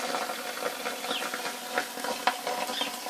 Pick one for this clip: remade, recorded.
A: recorded